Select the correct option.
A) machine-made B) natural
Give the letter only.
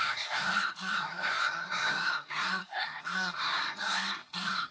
A